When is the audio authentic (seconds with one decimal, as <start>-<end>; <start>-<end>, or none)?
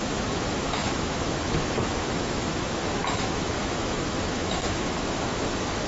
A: none